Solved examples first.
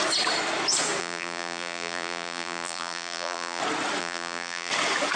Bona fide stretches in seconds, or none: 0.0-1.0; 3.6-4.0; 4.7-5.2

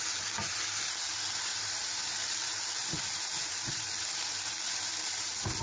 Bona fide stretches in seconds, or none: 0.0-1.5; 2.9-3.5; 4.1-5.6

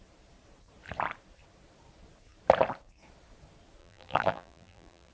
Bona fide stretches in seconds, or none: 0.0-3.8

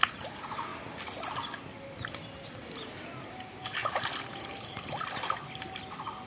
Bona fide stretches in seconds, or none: 0.0-6.3

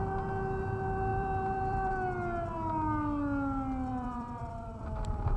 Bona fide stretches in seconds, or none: 0.0-1.1; 1.9-3.9